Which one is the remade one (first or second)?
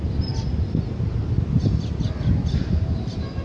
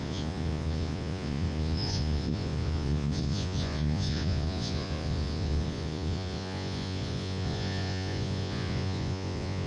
second